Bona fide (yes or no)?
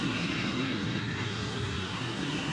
no